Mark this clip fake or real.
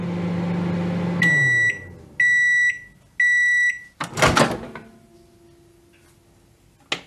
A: real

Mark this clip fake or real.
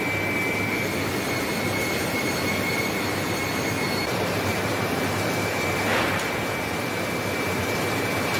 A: fake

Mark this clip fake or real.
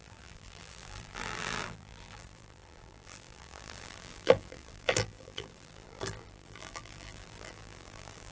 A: fake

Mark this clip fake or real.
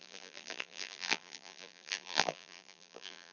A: fake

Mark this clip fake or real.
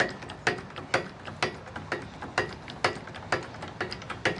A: real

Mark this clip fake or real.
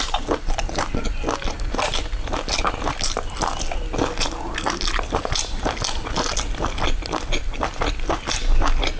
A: real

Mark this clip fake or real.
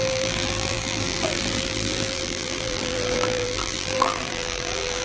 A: fake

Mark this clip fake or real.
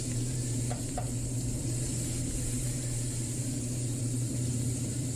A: fake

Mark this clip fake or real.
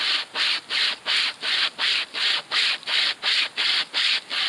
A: real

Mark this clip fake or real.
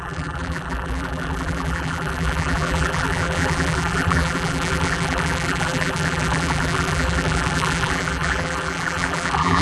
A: fake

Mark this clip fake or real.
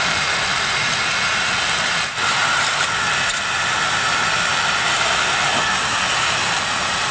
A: fake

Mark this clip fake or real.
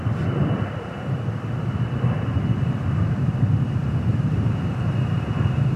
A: real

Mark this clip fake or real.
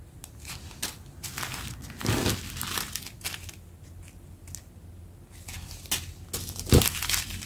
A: real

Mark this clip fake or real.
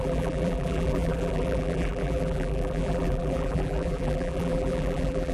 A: fake